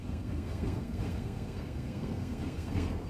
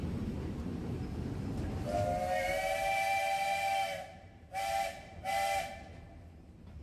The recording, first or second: second